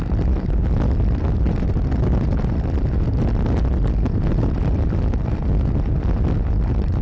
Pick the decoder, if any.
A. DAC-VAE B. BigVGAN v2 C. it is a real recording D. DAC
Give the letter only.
B